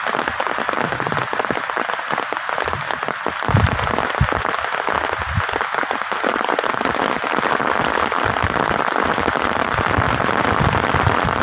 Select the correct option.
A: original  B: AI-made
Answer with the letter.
A